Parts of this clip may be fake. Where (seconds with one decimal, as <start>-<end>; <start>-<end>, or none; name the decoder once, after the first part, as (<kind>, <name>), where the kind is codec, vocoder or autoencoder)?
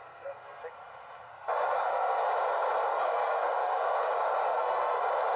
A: 0.0-0.6 (codec, SNAC); 1.3-2.3; 2.9-4.1; 4.5-5.0